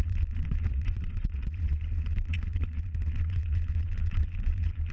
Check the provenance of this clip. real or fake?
fake